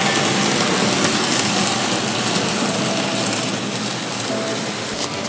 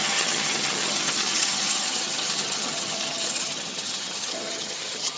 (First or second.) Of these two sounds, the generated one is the second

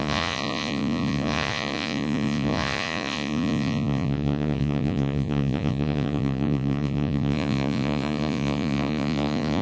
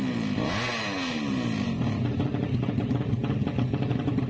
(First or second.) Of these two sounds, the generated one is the first